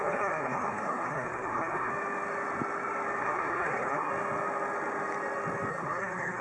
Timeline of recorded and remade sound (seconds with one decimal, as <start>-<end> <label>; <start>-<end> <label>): 0.0-1.9 remade; 1.9-3.2 recorded; 3.2-4.1 remade; 4.1-5.7 recorded; 5.7-6.4 remade